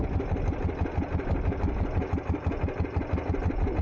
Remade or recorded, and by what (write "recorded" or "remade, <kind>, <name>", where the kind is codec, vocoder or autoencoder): recorded